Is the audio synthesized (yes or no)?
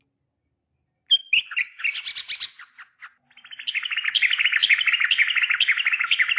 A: no